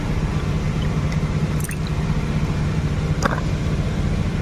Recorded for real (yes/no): yes